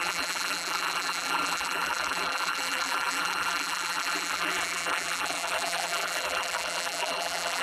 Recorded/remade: remade